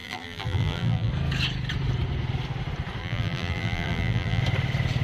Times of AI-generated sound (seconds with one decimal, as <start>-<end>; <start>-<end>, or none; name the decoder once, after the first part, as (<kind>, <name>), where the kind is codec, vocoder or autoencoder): 0.0-1.1 (vocoder, BigVGAN v2); 3.0-4.4